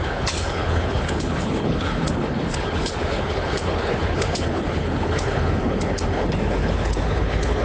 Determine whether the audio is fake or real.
fake